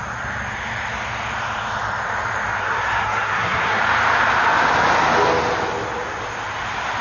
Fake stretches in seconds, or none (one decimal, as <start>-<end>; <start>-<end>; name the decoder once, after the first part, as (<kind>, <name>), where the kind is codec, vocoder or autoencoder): 2.6-3.8 (codec, SNAC)